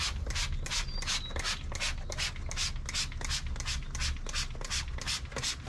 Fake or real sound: real